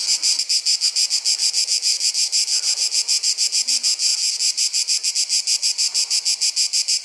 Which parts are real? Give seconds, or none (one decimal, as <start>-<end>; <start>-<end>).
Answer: 0.0-7.0

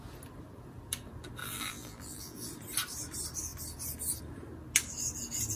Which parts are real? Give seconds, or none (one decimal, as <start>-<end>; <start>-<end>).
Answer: 0.0-1.4; 2.5-5.6

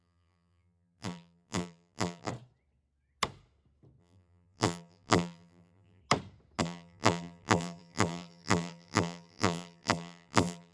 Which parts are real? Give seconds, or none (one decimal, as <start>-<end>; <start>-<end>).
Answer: 2.3-4.0; 6.0-6.6

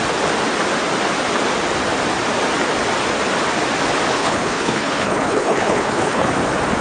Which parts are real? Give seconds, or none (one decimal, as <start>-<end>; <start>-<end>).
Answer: 0.0-4.2; 6.3-6.8

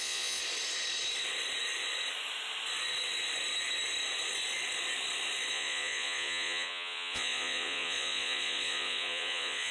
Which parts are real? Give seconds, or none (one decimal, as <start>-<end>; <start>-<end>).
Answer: 0.4-5.5